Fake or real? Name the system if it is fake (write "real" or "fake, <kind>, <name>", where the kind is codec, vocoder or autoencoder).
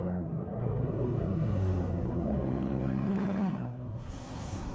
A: fake, codec, SNAC